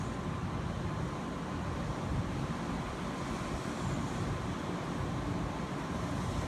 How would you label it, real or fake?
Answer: real